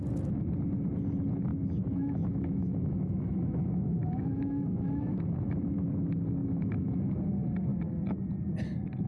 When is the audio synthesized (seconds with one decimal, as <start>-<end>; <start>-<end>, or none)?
1.5-5.9; 6.4-7.0